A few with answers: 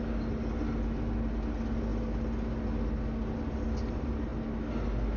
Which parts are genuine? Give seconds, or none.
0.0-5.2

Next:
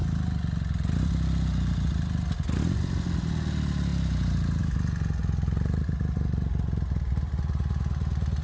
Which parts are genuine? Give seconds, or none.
0.0-8.4

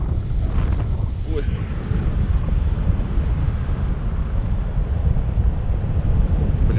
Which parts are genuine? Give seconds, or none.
0.0-3.4; 3.9-6.8

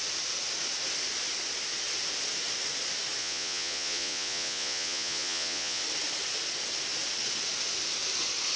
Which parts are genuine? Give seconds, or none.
0.0-3.2; 5.8-8.6